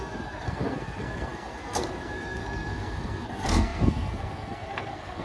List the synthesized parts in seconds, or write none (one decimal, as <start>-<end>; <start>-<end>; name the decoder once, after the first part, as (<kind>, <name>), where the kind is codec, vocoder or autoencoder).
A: 0.0-5.2 (codec, SNAC)